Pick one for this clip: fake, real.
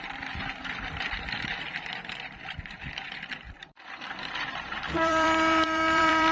fake